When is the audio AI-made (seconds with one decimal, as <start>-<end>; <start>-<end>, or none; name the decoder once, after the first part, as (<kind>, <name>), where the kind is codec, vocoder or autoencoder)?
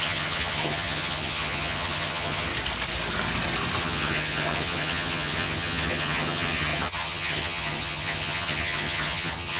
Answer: 0.0-2.5 (vocoder, HiFi-GAN); 3.8-9.6